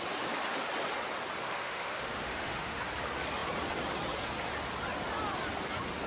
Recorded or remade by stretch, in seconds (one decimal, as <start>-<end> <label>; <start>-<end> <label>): 0.0-1.4 recorded; 1.4-2.8 remade; 2.8-6.1 recorded